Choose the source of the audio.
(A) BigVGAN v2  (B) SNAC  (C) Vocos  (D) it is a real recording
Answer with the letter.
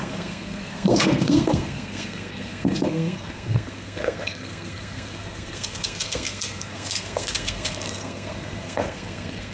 B